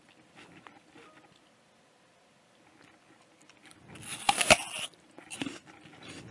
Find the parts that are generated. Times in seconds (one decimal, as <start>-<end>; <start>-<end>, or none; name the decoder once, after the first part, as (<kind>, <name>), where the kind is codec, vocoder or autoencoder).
none

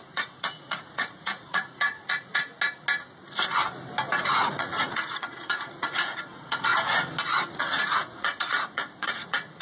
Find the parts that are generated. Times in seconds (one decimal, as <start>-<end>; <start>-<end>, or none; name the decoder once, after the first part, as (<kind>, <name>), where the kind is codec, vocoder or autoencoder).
0.0-2.5 (vocoder, Vocos); 4.3-6.7; 7.5-9.6